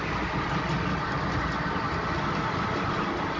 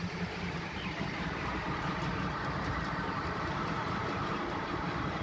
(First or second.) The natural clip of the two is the first